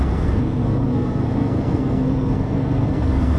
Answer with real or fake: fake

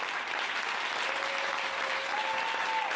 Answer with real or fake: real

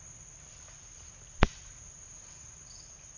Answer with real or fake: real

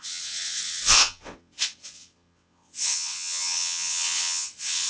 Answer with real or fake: fake